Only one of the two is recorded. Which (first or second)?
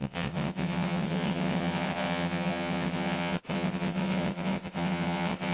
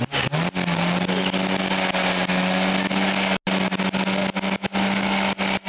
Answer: second